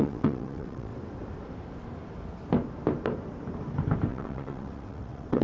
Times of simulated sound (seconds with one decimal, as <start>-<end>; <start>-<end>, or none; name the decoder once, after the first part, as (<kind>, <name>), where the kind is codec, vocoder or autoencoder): 0.0-0.9 (vocoder, WaveNeXt); 4.1-5.4